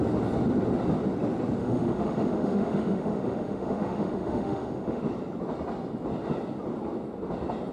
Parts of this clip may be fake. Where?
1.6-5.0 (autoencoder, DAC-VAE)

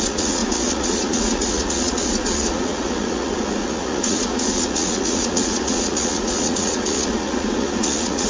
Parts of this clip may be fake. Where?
0.0-8.3 (vocoder, Vocos)

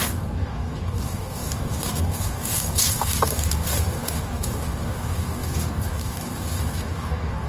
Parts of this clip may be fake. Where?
0.0-7.5 (codec, DAC)

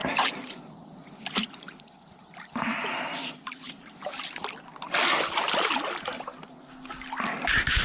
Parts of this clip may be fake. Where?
0.0-0.5 (vocoder, BigVGAN v2); 1.4-4.2

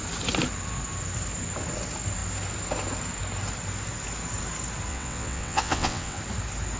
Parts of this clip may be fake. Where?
4.9-6.2 (vocoder, WaveNeXt)

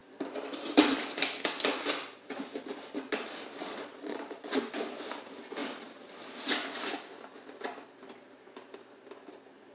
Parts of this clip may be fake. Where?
3.6-4.6 (vocoder, Vocos)